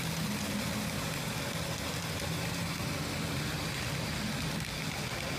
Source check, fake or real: real